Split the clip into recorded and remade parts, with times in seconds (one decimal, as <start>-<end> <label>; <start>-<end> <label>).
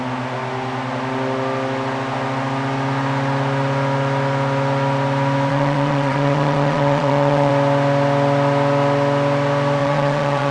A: 0.0-5.5 recorded; 5.5-7.5 remade; 7.5-9.8 recorded; 9.8-10.5 remade